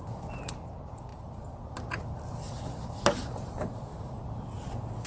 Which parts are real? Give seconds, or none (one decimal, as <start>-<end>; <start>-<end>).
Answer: 0.0-5.1